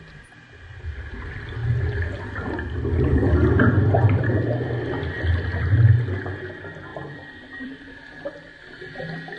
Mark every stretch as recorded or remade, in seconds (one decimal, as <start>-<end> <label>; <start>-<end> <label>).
0.0-6.9 recorded; 6.9-8.7 remade; 8.7-9.4 recorded